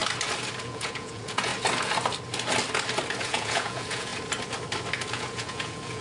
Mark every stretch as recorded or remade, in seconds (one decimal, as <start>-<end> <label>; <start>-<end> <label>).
0.0-0.6 recorded; 0.6-1.5 remade; 1.5-3.2 recorded; 3.2-4.1 remade; 4.1-5.1 recorded; 5.1-6.0 remade